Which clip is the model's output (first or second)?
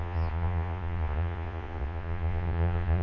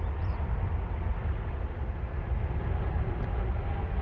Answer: first